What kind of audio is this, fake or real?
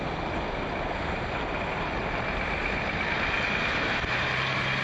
real